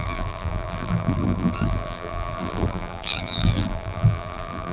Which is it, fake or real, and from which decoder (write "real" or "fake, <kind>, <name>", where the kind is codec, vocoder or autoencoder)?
fake, vocoder, BigVGAN v2